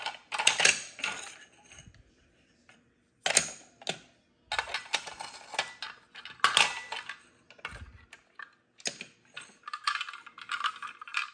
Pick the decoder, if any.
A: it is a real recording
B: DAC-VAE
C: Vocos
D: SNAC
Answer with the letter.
A